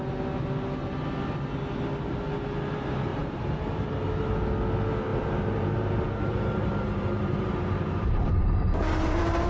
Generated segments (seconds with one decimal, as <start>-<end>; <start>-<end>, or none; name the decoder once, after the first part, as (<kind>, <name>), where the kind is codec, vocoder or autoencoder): 3.1-4.0 (vocoder, BigVGAN v2); 5.1-9.5